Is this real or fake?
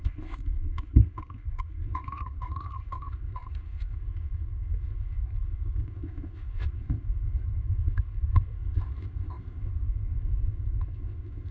fake